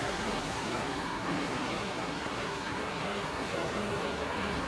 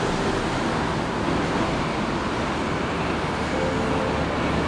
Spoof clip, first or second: first